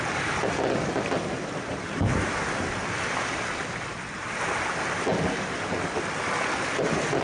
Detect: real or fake real